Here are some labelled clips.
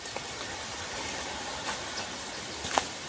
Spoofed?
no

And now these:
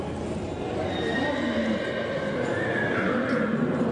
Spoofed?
no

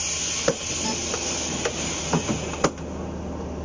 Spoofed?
no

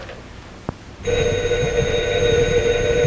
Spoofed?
no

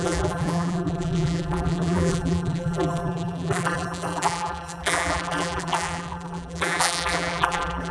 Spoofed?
yes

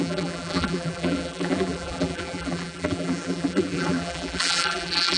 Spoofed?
yes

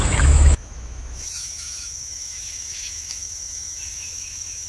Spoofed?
yes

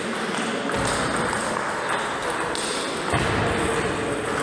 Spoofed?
no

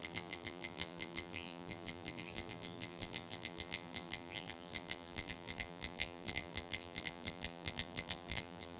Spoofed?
yes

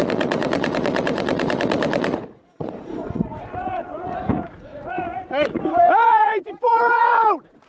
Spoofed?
yes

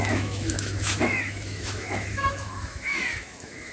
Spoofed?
yes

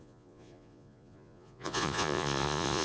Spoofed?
yes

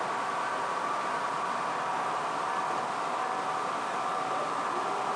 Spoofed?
no